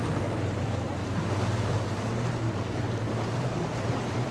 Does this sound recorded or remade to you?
recorded